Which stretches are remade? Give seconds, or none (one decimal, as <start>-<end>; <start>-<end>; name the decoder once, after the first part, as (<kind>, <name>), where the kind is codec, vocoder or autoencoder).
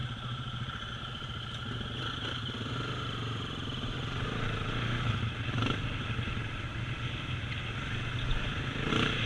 0.0-6.7 (vocoder, BigVGAN v2); 8.9-9.3